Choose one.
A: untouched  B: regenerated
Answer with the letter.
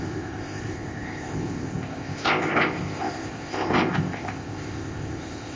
B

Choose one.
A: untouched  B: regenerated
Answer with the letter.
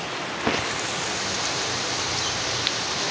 A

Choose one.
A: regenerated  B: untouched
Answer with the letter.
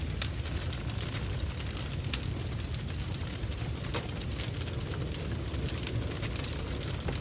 B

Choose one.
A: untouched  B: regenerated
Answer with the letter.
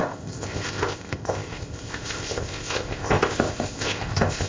B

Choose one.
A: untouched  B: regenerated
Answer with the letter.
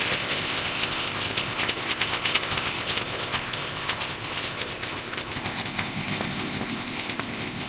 B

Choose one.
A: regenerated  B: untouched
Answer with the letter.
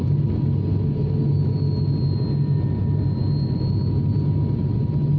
B